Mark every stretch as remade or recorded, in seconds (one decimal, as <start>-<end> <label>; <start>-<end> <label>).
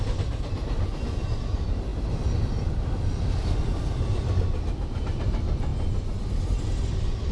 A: 0.0-7.3 recorded